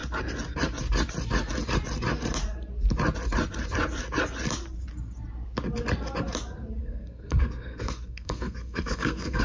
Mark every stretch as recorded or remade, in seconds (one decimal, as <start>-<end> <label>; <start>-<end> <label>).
0.0-6.8 recorded; 6.8-9.4 remade